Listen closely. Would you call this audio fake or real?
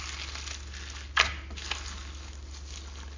real